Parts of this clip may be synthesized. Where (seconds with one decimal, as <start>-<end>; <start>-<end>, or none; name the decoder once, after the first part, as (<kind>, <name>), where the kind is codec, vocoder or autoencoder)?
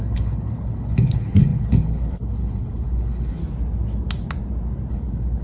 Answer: 0.0-3.4 (codec, HILCodec); 4.9-5.4